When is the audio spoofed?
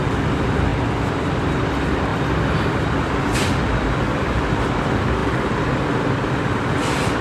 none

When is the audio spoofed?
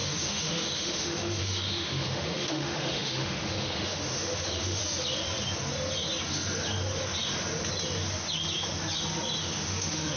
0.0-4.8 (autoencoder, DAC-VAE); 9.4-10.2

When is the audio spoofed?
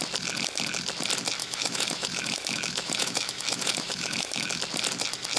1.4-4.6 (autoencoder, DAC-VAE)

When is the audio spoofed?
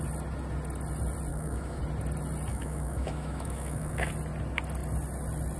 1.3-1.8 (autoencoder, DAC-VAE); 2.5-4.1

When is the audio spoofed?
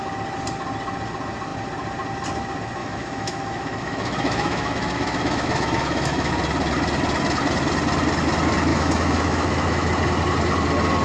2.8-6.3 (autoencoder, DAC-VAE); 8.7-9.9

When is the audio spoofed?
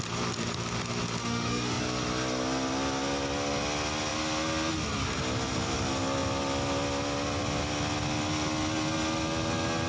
1.2-1.8 (autoencoder, DAC-VAE)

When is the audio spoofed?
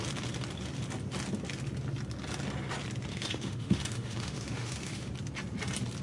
3.1-5.1 (autoencoder, DAC-VAE)